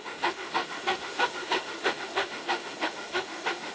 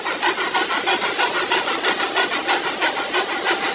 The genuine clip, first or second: second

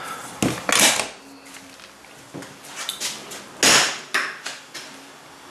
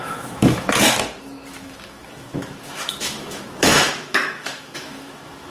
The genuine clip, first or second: first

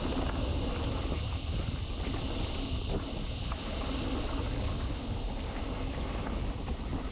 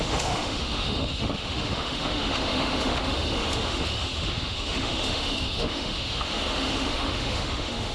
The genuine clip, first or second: first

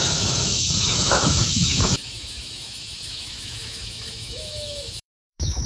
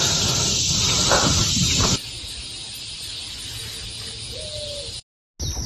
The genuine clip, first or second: second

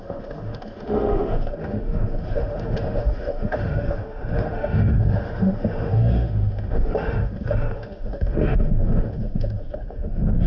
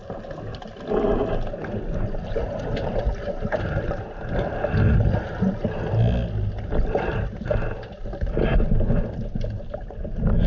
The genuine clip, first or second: second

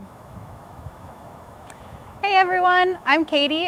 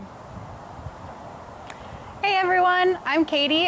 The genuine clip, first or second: second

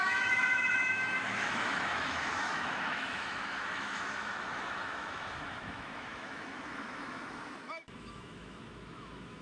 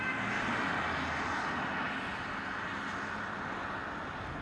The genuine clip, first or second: second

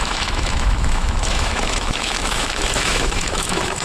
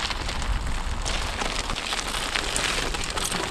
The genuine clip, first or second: second